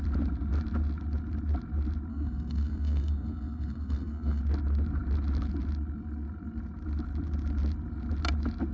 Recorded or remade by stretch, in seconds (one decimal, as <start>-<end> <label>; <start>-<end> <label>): 0.0-2.1 recorded; 2.1-4.4 remade; 4.4-8.7 recorded

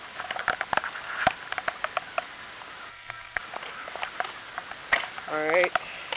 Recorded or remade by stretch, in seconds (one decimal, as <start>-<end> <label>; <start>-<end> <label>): 0.0-2.9 recorded; 2.9-3.4 remade; 3.4-6.2 recorded

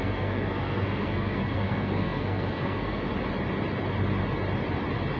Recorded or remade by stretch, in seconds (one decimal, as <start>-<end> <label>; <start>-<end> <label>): 0.0-3.1 remade; 3.1-5.2 recorded

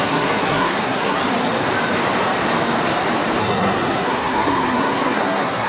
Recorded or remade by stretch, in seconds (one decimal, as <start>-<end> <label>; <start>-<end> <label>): 0.0-1.2 remade; 1.2-3.4 recorded; 3.4-5.7 remade

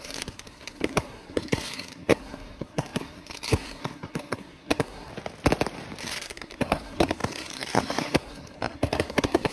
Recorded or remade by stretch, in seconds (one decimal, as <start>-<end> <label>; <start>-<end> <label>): 0.0-5.1 remade; 5.1-6.0 recorded; 6.0-9.5 remade

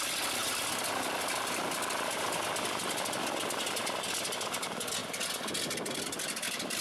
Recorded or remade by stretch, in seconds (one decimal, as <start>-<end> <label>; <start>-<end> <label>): 0.0-6.8 recorded